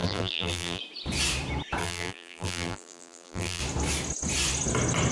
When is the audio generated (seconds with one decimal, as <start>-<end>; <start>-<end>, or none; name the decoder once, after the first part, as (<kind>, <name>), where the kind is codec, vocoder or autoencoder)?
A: 0.0-0.8 (vocoder, BigVGAN v2); 1.8-3.6